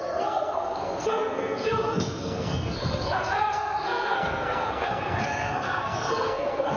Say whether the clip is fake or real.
fake